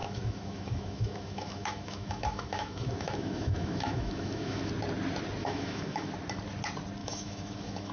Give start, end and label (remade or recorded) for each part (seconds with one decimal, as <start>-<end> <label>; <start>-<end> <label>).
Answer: 0.0-4.7 remade; 4.7-5.4 recorded; 5.4-6.1 remade; 6.1-7.0 recorded; 7.0-7.9 remade